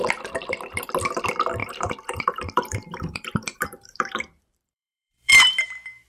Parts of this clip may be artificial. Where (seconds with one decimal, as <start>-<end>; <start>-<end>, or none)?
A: 1.6-5.3